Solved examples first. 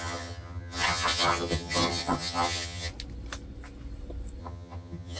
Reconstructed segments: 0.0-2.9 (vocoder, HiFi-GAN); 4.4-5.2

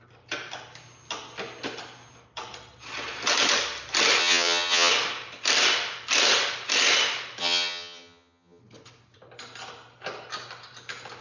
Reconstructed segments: 4.2-4.9 (vocoder, HiFi-GAN); 7.4-8.6

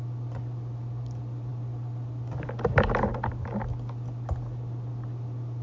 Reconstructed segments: none

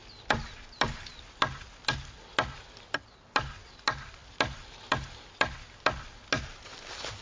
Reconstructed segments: none

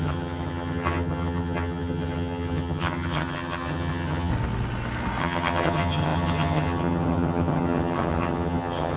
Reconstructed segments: 0.0-4.3 (vocoder, HiFi-GAN); 5.2-9.0

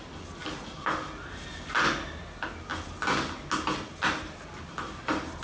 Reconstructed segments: none

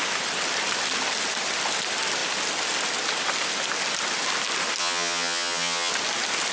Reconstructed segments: 4.8-5.9 (vocoder, HiFi-GAN)

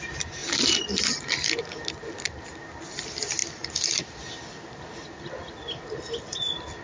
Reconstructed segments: none